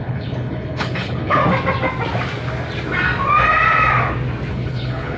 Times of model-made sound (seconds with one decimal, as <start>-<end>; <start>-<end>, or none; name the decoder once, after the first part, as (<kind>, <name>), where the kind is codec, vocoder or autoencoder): 0.0-1.4 (codec, HILCodec); 4.5-5.2

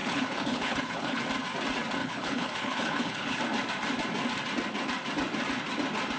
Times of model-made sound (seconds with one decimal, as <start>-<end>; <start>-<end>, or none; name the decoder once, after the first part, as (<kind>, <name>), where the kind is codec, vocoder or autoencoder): 0.0-1.2 (codec, HILCodec); 2.0-3.4

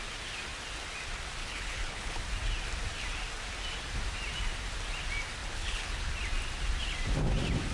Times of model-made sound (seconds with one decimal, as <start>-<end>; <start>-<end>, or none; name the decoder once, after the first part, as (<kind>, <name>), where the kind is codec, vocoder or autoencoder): 1.4-2.2 (codec, HILCodec); 5.4-6.1

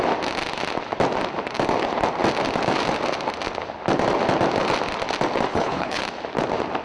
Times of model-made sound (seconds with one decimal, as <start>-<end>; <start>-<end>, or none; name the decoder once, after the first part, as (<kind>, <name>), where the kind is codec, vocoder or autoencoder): 5.5-6.0 (codec, HILCodec)

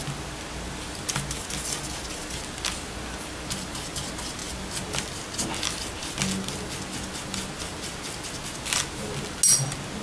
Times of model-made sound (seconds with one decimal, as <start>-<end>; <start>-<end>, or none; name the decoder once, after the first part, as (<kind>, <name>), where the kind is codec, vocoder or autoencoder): none

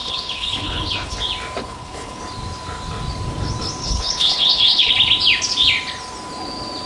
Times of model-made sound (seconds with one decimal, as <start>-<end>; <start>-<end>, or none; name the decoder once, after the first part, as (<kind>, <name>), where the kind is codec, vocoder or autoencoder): 0.0-1.2 (codec, HILCodec); 1.6-2.2; 3.8-4.9

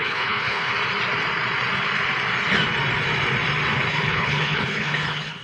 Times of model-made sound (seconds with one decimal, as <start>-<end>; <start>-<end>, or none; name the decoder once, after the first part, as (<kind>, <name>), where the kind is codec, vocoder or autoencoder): 0.0-0.7 (codec, HILCodec); 3.9-5.4